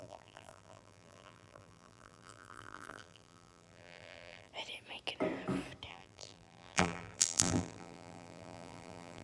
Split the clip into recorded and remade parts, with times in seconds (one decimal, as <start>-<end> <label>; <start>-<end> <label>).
0.0-4.5 remade; 4.5-5.9 recorded; 5.9-9.2 remade